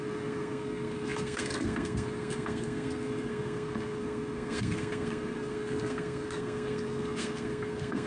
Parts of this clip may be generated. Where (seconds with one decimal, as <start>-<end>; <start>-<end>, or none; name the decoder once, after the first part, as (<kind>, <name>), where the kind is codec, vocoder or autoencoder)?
0.0-8.1 (codec, SNAC)